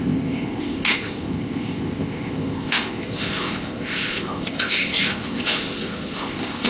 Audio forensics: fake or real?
fake